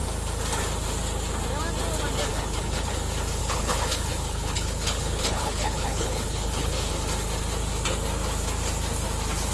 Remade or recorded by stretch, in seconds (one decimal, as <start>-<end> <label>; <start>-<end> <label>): 0.0-2.3 recorded; 2.3-2.9 remade; 2.9-3.4 recorded; 3.4-6.9 remade; 6.9-9.5 recorded